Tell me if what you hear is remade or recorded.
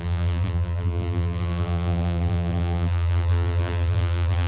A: remade